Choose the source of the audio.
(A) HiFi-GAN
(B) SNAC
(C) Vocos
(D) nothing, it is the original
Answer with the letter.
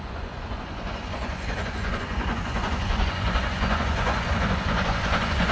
C